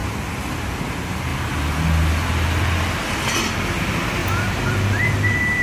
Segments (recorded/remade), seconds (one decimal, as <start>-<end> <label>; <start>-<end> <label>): 0.0-4.2 recorded; 4.2-5.6 remade